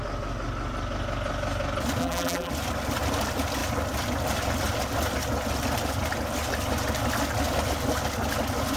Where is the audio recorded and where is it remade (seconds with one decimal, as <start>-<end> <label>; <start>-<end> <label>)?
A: 0.0-2.0 recorded; 2.0-2.5 remade; 2.5-8.8 recorded